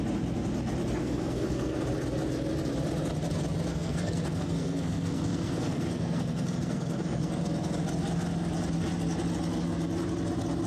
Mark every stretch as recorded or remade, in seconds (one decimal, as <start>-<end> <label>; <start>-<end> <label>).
0.0-1.0 recorded; 1.0-1.8 remade; 1.8-3.7 recorded; 3.7-7.4 remade; 7.4-10.7 recorded